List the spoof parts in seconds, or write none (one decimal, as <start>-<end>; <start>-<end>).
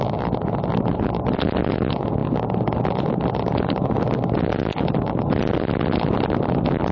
none